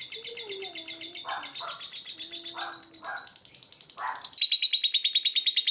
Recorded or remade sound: recorded